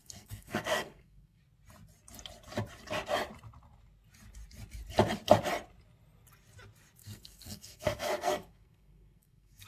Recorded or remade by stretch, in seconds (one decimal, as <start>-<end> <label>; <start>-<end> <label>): 0.0-1.4 remade; 1.4-7.0 recorded; 7.0-9.7 remade